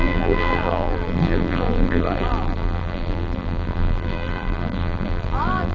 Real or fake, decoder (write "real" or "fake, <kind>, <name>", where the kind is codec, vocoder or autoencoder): fake, vocoder, BigVGAN v2